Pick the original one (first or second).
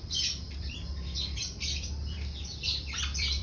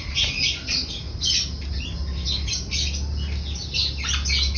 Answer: second